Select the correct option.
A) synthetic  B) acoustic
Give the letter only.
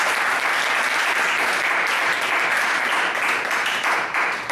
B